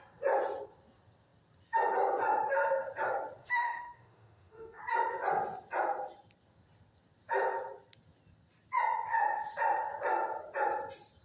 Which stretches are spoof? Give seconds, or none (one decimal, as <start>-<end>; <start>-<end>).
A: 3.4-4.8